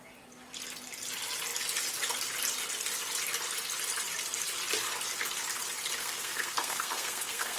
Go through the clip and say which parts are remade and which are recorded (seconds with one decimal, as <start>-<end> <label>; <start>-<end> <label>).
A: 0.0-6.0 recorded; 6.0-7.6 remade